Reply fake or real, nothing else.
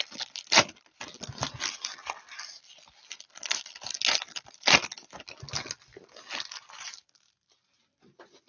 real